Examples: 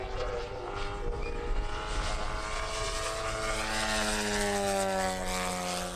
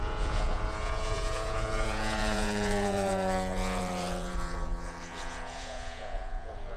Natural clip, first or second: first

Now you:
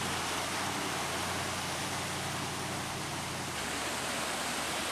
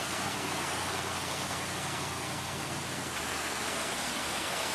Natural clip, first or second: first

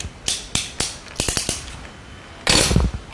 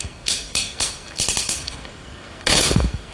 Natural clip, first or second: first